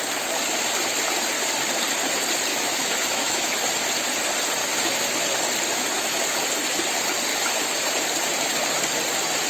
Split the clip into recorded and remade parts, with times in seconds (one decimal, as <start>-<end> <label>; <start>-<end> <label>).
0.0-2.5 recorded; 2.5-3.7 remade; 3.7-4.6 recorded; 4.6-5.2 remade; 5.2-5.7 recorded; 5.7-6.2 remade; 6.2-7.3 recorded; 7.3-7.9 remade; 7.9-9.5 recorded

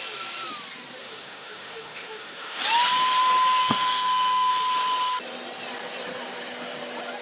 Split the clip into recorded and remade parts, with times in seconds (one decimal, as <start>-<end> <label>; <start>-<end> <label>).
0.0-1.0 recorded; 1.0-2.6 remade; 2.6-3.6 recorded; 3.6-4.5 remade; 4.5-7.2 recorded